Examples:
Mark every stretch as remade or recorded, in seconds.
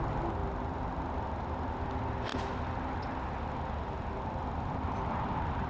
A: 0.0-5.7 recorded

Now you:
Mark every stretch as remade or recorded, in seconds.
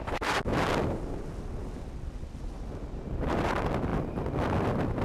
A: 0.0-5.0 recorded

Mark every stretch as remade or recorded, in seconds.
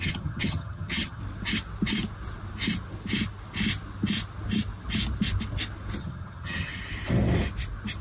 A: 0.0-1.2 remade; 1.2-6.0 recorded; 6.0-6.7 remade; 6.7-8.0 recorded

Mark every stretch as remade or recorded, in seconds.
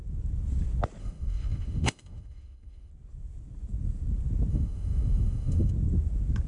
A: 0.0-1.0 recorded; 1.0-2.9 remade; 2.9-4.5 recorded; 4.5-5.7 remade; 5.7-6.5 recorded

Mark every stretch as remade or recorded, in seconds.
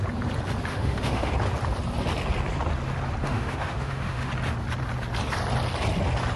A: 0.0-0.7 recorded; 0.7-1.3 remade; 1.3-3.2 recorded; 3.2-4.3 remade; 4.3-6.4 recorded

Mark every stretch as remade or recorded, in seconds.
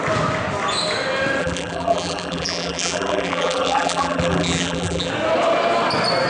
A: 0.0-1.4 recorded; 1.4-5.1 remade; 5.1-6.3 recorded